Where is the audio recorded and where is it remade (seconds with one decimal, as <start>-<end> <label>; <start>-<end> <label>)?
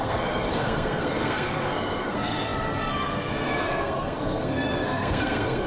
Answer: 0.0-5.7 remade